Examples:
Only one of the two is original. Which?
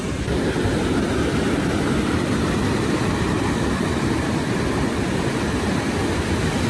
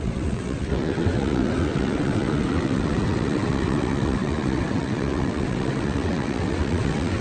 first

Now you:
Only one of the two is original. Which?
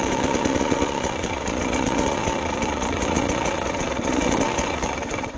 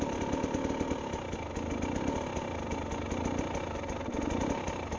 second